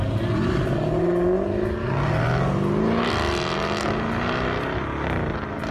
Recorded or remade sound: recorded